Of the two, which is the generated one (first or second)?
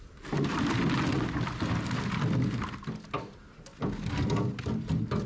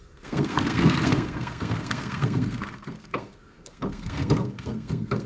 second